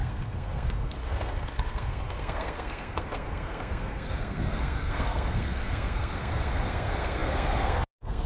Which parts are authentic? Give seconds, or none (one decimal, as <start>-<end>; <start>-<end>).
none